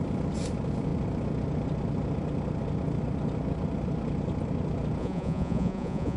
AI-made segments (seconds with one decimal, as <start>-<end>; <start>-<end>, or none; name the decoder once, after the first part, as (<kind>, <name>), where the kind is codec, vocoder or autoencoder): 5.0-6.2 (vocoder, Vocos)